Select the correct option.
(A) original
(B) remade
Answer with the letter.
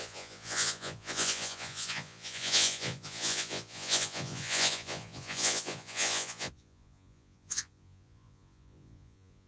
B